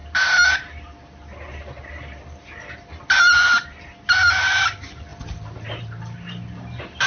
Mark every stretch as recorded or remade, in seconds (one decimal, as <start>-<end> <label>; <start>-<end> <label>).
0.0-7.1 recorded